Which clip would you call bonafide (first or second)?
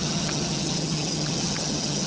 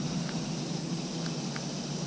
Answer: second